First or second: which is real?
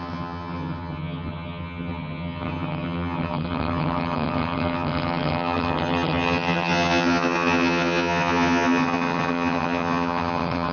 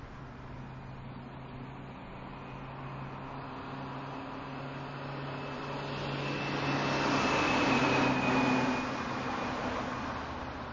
second